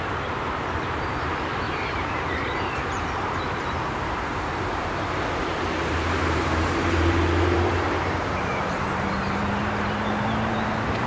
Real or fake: fake